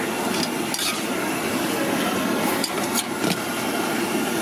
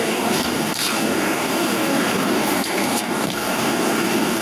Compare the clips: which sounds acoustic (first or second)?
first